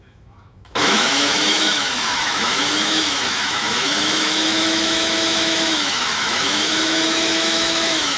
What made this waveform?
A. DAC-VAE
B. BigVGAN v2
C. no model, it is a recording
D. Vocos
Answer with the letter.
A